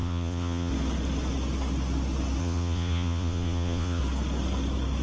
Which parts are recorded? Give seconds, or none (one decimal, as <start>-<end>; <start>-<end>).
0.7-2.4; 4.0-5.0